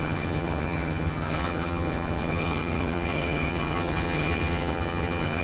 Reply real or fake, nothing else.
fake